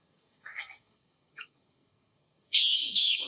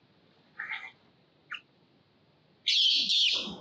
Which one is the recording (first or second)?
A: second